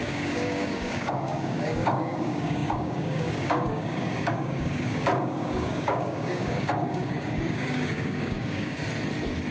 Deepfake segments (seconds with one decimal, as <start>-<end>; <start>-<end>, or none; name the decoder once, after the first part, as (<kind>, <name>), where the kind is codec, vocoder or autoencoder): 0.0-8.8 (codec, DAC)

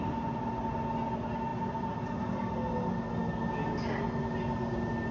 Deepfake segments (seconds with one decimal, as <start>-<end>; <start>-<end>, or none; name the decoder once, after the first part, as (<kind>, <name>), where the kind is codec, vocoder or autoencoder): none